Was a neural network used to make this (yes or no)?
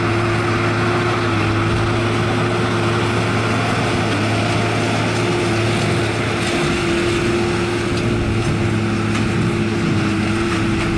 no